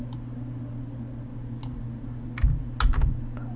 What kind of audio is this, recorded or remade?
recorded